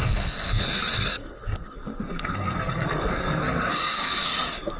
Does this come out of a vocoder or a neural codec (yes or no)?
yes